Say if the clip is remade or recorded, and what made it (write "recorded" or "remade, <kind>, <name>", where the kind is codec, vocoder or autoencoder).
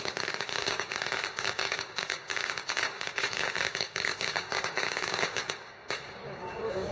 remade, codec, DAC